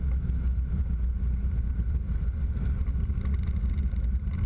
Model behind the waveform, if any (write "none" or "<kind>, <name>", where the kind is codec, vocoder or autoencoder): none